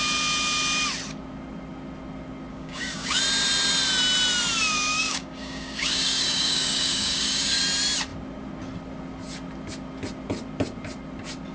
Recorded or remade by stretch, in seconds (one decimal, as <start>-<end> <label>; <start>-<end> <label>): 0.0-2.5 recorded; 2.5-3.2 remade; 3.2-4.9 recorded; 4.9-7.6 remade; 7.6-11.5 recorded